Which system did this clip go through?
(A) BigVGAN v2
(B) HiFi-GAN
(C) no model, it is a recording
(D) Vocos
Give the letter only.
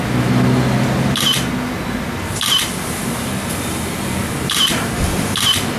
C